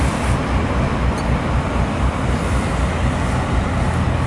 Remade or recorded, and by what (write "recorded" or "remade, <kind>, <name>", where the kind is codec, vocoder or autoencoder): recorded